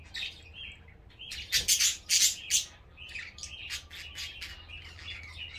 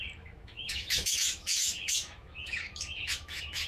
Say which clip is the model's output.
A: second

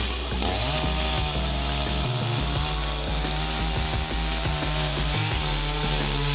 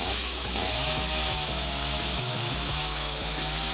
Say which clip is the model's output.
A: second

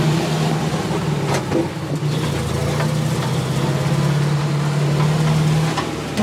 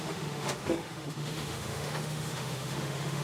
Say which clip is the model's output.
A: second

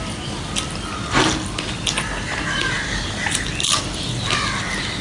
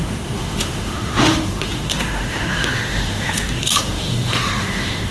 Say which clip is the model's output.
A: second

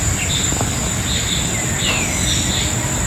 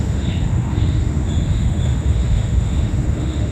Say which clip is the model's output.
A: second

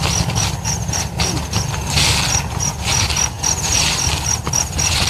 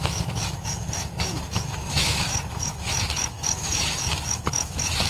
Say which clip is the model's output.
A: second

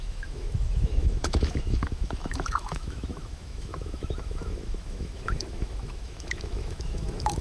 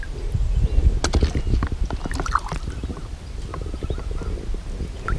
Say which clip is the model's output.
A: first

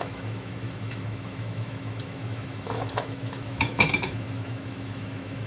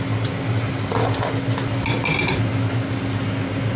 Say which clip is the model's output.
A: first